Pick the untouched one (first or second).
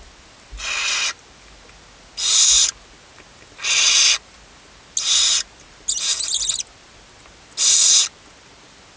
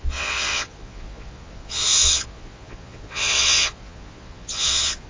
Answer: first